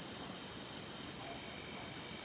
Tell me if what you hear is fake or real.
real